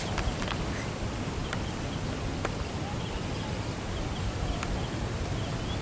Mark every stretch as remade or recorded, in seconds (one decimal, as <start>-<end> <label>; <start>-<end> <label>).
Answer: 0.0-5.8 recorded